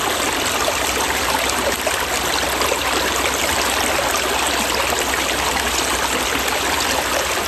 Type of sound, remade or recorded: recorded